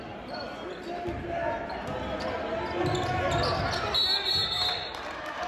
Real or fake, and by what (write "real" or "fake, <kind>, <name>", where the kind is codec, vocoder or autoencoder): real